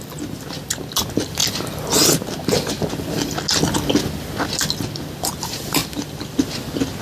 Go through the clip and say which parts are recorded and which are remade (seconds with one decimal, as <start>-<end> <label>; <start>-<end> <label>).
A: 0.0-7.0 recorded

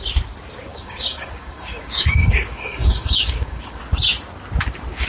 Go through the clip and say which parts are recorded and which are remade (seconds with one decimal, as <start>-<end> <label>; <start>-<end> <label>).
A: 0.0-0.7 recorded; 0.7-3.8 remade; 3.8-5.1 recorded

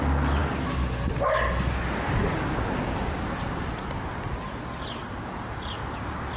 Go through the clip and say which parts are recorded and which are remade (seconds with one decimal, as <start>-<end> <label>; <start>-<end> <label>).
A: 0.0-6.4 recorded

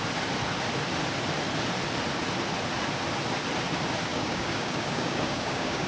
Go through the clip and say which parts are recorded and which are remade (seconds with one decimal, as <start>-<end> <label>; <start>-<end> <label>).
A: 0.0-4.1 recorded; 4.1-5.9 remade

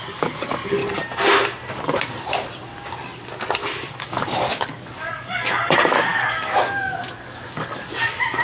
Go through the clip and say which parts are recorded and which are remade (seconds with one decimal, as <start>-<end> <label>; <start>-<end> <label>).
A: 0.0-0.8 remade; 0.8-3.9 recorded; 3.9-8.4 remade

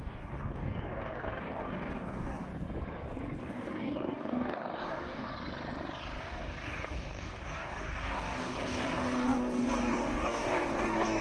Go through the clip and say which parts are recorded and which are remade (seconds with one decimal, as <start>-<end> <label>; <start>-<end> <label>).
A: 0.0-2.5 remade; 2.5-3.4 recorded; 3.4-5.3 remade; 5.3-6.2 recorded; 6.2-11.2 remade

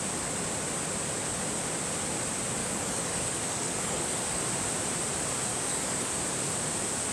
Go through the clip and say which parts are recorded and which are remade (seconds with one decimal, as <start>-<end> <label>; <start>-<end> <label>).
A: 0.0-2.6 recorded; 2.6-4.4 remade; 4.4-5.5 recorded; 5.5-6.1 remade; 6.1-7.1 recorded